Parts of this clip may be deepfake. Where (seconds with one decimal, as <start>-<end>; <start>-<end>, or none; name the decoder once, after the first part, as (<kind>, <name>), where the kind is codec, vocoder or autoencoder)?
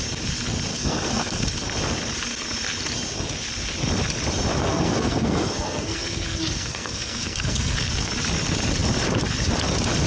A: 0.7-1.4 (codec, SNAC); 4.6-8.1